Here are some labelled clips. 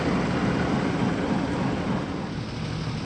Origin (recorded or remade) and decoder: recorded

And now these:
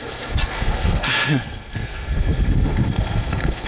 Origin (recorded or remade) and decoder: remade, codec, SNAC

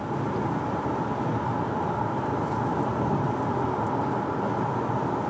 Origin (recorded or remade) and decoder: recorded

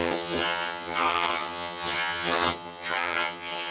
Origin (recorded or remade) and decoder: remade, vocoder, HiFi-GAN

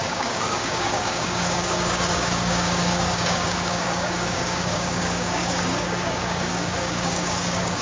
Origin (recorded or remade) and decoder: remade, codec, DAC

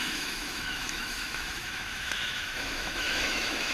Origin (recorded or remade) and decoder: remade, autoencoder, DAC-VAE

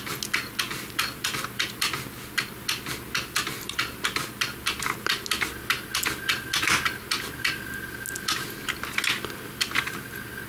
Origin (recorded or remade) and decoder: recorded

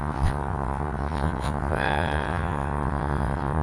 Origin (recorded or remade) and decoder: remade, vocoder, WaveNeXt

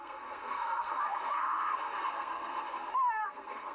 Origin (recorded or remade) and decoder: remade, codec, SNAC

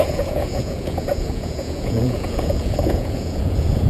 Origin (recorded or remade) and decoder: remade, vocoder, Vocos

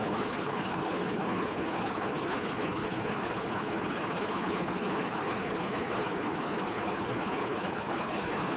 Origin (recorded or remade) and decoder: remade, codec, HILCodec